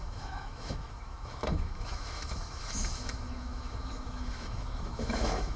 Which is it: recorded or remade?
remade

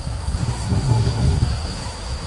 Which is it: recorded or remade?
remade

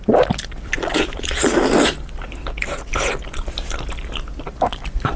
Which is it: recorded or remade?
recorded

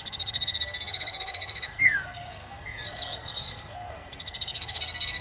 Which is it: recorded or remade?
remade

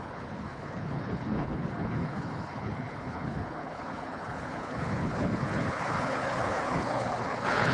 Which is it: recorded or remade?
remade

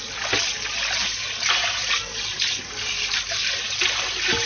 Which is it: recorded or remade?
recorded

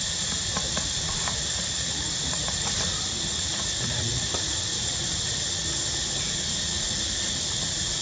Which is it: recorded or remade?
remade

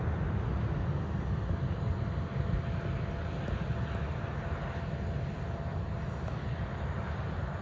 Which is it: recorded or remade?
recorded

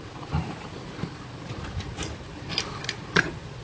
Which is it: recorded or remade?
recorded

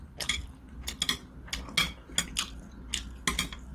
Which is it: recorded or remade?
recorded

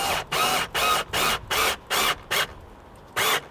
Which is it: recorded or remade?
recorded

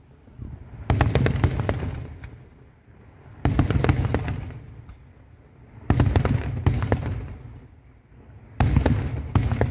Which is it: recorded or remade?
recorded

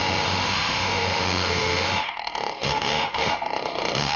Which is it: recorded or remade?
remade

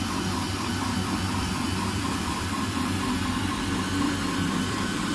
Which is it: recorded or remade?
remade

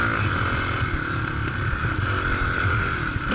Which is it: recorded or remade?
recorded